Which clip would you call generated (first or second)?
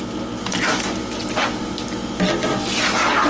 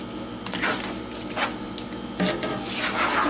first